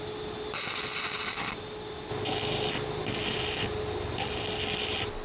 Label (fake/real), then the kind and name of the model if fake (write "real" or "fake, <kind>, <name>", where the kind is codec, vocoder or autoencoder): real